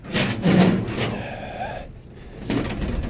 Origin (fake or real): real